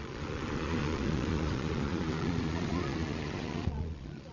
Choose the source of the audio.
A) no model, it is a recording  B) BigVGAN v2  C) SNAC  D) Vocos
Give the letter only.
D